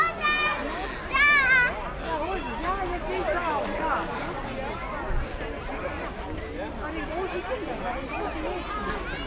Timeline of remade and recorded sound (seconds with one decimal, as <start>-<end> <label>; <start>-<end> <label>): 0.0-3.4 recorded; 3.4-4.4 remade; 4.4-9.3 recorded